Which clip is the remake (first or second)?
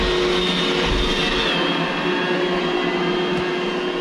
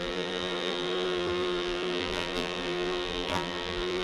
second